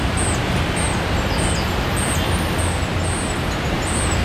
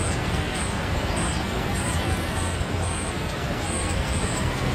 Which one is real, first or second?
first